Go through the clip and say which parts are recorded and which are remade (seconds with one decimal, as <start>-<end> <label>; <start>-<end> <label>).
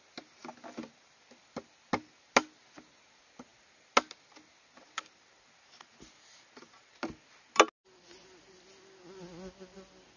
0.0-10.2 recorded